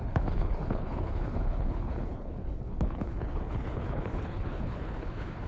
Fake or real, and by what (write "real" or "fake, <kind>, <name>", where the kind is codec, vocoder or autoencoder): fake, codec, HILCodec